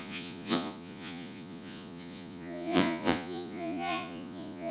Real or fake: fake